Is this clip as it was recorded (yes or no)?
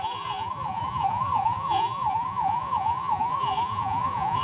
no